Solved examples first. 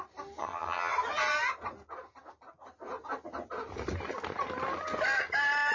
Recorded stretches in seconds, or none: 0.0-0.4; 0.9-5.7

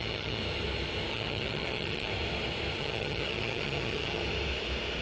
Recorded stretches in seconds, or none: 0.4-1.1; 2.1-2.8; 4.2-5.0

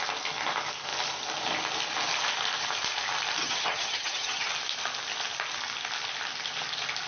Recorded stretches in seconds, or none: 0.0-3.4; 4.5-7.1

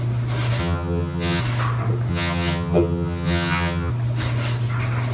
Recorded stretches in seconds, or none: 0.0-0.6; 1.4-2.1; 3.9-5.1

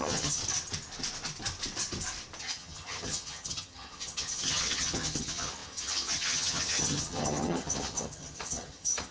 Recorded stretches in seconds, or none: 0.4-2.4

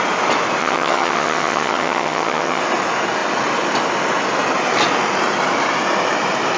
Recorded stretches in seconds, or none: 0.0-0.6; 2.6-6.6

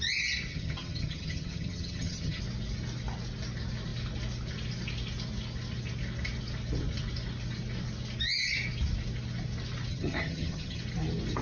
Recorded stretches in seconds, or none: 0.0-0.5; 2.4-9.9; 10.8-11.4